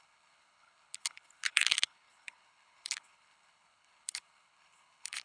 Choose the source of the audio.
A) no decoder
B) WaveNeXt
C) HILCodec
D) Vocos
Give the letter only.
C